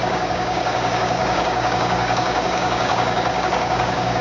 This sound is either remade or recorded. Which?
remade